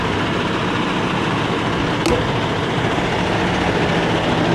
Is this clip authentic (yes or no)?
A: yes